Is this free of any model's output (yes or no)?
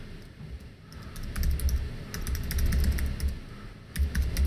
yes